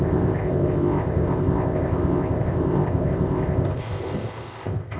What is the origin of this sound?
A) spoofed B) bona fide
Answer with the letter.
A